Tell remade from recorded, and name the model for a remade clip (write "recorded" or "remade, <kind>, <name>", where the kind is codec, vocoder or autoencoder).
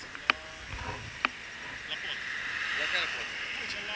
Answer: recorded